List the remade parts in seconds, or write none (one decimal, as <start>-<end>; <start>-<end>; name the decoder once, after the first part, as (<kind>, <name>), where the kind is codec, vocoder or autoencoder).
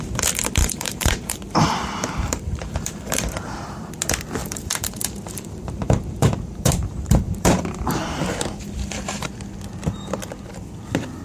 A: 0.6-3.9 (vocoder, BigVGAN v2); 4.4-9.3